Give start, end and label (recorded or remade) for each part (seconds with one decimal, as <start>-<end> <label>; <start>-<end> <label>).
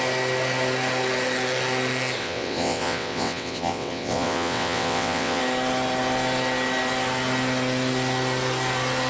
0.0-2.2 recorded; 2.2-5.4 remade; 5.4-9.1 recorded